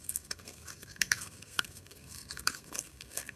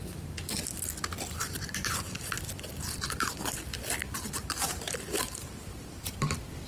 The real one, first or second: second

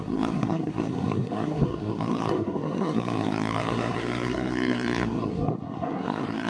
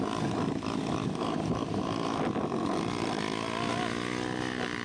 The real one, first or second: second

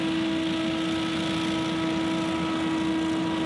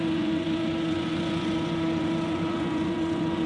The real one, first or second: first